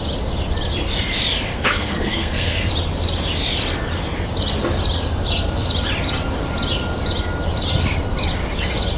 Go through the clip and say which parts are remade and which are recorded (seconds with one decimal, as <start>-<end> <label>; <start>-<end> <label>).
0.0-1.5 recorded; 1.5-2.7 remade; 2.7-9.0 recorded